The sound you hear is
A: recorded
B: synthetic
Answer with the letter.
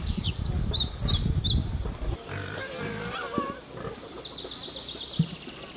A